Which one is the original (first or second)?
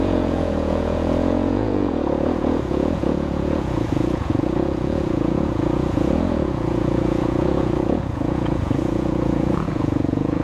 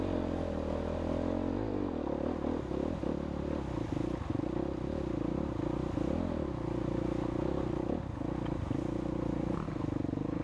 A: second